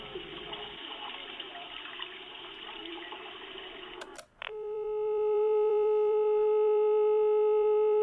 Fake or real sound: fake